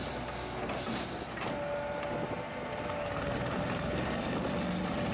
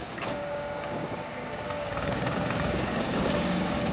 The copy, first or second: second